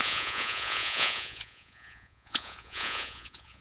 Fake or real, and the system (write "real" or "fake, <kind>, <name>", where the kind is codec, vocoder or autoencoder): fake, vocoder, Vocos